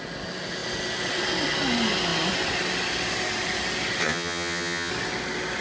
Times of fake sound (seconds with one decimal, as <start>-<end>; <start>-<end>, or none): 4.0-4.9